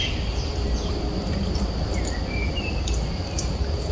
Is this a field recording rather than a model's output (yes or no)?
yes